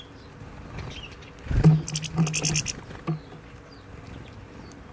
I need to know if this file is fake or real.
real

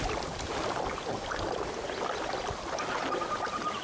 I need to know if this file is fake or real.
real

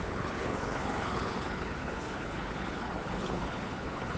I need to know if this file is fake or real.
fake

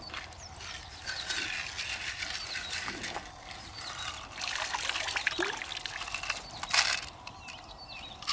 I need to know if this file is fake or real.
real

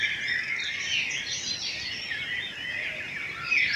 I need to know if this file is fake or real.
real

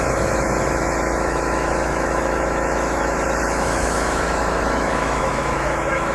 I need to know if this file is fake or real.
fake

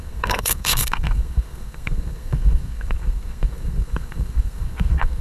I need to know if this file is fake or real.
fake